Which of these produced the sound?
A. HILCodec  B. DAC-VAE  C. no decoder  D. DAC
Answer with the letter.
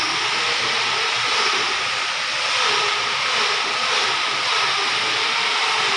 C